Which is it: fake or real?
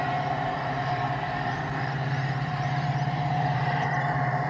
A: fake